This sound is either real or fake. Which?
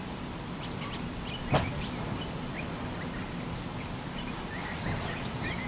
fake